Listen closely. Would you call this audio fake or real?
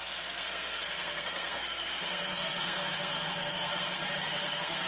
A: fake